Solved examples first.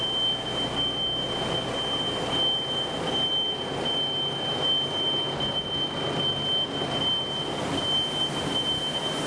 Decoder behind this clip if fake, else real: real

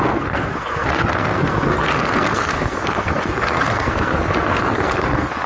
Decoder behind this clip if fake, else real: fake, codec, SNAC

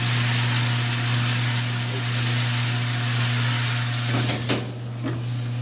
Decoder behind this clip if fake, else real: real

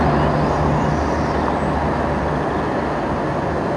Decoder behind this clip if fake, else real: real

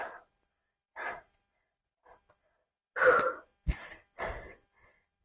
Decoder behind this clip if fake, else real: real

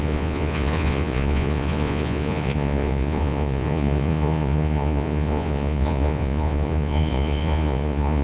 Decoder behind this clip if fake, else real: fake, vocoder, Vocos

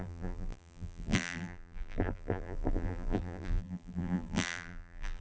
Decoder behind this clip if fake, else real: fake, vocoder, BigVGAN v2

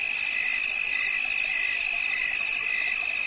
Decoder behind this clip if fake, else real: real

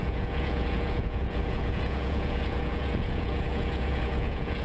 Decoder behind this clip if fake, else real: fake, vocoder, Vocos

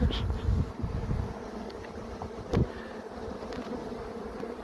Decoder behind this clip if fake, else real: real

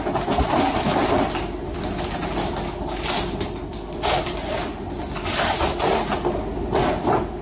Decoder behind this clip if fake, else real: real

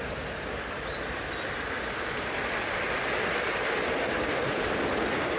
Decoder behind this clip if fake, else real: real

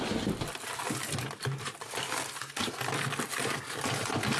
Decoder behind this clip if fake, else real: real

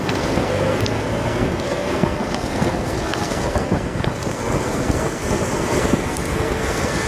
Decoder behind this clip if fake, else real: fake, codec, SNAC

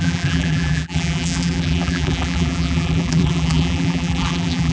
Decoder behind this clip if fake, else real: fake, vocoder, BigVGAN v2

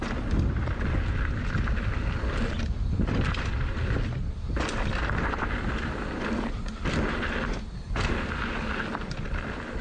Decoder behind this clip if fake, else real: real